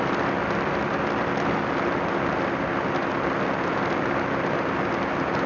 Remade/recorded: recorded